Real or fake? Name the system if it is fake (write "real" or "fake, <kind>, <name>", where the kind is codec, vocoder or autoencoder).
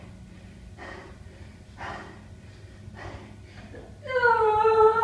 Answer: real